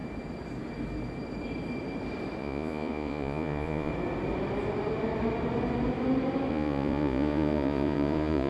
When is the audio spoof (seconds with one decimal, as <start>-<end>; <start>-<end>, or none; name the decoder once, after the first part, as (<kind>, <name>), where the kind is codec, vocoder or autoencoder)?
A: 2.4-3.9 (vocoder, Vocos); 6.5-8.5